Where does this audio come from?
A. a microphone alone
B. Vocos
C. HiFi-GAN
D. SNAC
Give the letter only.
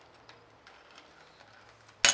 A